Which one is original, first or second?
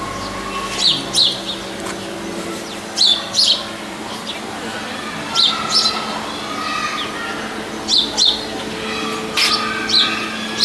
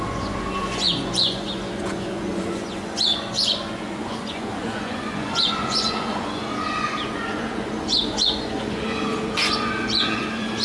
first